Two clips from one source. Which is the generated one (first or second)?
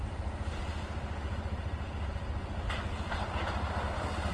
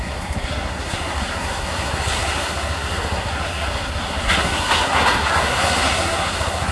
second